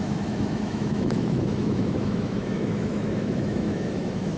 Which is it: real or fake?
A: fake